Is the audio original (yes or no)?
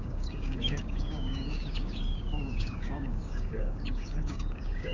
no